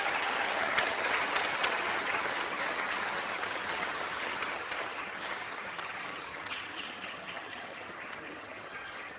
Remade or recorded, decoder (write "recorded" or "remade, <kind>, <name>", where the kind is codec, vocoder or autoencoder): remade, vocoder, HiFi-GAN